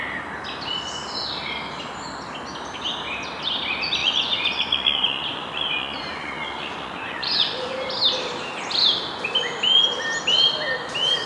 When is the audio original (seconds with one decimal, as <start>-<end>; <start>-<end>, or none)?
0.0-4.0; 7.7-11.3